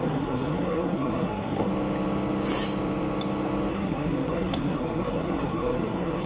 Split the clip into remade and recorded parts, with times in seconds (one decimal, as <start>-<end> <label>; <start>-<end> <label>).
0.0-1.7 remade; 1.7-3.7 recorded; 3.7-6.3 remade